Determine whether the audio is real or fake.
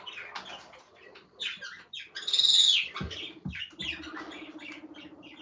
real